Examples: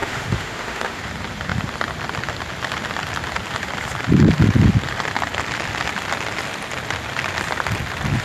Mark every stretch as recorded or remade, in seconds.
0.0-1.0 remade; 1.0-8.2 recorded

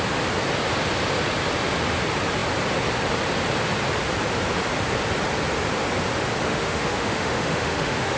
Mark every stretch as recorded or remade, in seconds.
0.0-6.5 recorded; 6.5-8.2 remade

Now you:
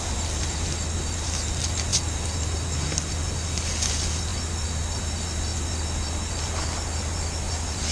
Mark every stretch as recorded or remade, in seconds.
0.0-7.9 recorded